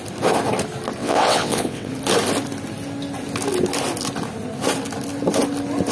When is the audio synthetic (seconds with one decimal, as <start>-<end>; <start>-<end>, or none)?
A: 1.0-1.9